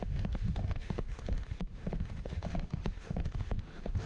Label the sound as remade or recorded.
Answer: remade